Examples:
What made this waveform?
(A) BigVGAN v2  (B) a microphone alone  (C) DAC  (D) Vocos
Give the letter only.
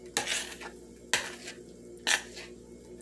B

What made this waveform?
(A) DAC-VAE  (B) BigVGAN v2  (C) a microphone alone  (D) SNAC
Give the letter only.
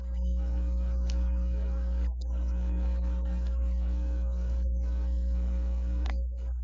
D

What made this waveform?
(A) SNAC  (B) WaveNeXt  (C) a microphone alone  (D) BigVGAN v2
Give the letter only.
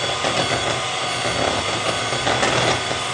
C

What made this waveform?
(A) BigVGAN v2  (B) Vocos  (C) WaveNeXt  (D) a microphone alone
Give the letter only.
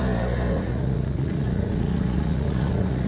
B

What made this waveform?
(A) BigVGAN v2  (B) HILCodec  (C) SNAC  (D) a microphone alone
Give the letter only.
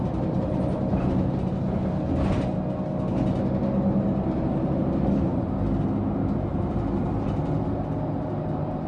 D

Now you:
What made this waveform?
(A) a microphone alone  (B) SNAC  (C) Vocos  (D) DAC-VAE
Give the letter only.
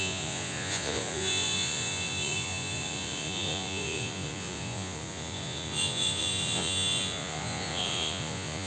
C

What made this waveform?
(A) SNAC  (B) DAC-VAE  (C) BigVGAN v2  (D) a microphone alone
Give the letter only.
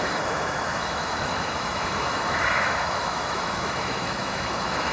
B